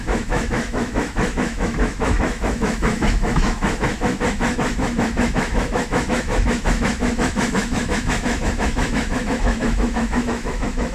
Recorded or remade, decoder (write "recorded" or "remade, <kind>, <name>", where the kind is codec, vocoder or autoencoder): remade, autoencoder, DAC-VAE